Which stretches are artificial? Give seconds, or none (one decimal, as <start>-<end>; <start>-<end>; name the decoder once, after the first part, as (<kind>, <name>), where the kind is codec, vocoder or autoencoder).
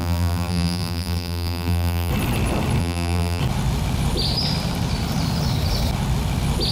0.0-2.1 (vocoder, BigVGAN v2); 2.8-3.4